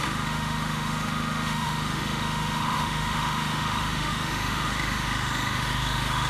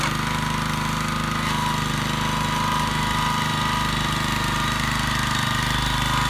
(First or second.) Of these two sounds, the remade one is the first